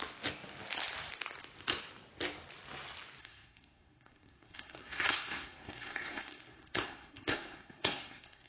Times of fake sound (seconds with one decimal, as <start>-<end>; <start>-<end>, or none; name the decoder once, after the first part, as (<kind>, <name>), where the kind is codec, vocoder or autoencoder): 3.2-8.5 (codec, SNAC)